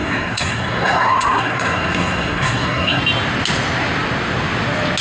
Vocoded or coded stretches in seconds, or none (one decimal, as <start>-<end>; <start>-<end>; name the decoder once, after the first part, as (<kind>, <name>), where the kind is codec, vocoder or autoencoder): 0.0-3.0 (codec, SNAC)